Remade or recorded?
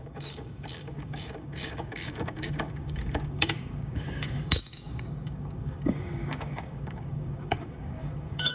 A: remade